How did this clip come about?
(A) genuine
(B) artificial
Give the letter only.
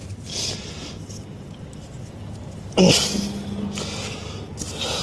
A